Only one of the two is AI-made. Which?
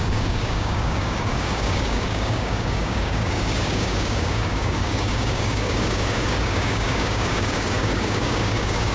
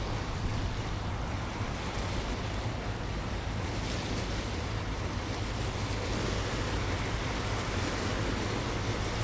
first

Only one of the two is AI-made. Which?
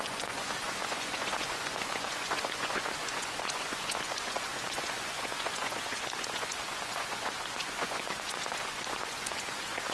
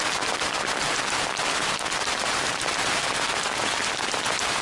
first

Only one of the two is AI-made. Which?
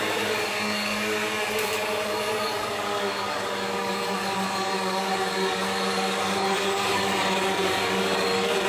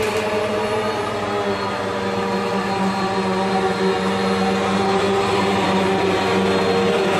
first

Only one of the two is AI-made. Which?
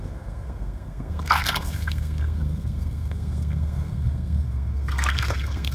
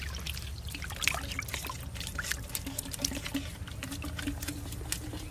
first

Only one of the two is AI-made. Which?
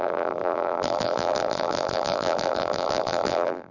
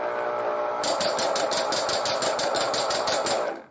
first